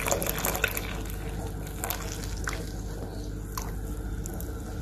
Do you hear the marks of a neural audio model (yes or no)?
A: no